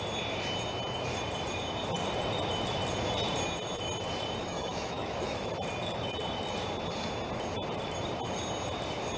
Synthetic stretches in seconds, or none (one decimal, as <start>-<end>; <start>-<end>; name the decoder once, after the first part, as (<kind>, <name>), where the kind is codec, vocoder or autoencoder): 4.4-5.5 (autoencoder, DAC-VAE)